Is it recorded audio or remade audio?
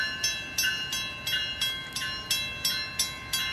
recorded